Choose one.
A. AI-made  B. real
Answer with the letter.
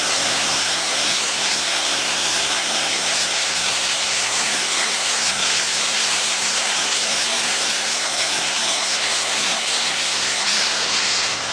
A